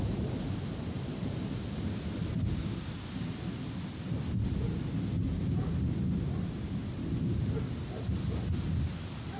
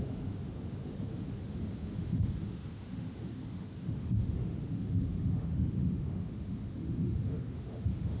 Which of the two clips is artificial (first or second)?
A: second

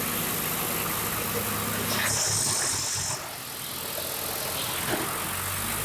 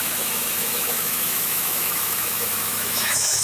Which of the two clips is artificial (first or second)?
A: second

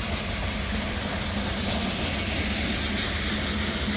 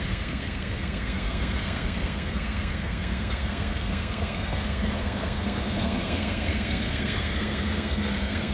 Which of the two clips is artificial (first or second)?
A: second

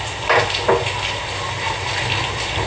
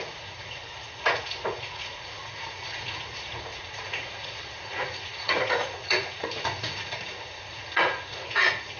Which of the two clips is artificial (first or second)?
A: second